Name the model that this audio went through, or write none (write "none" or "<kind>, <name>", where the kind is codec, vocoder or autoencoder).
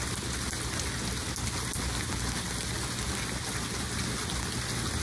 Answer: none